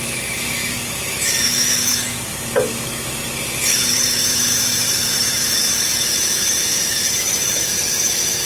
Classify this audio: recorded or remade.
remade